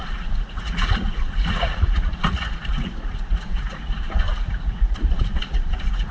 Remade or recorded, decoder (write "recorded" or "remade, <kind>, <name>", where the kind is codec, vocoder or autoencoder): remade, vocoder, Vocos